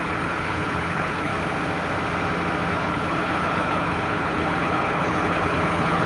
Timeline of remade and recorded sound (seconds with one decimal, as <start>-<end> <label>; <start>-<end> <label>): 0.0-1.3 remade; 1.3-2.7 recorded; 2.7-6.1 remade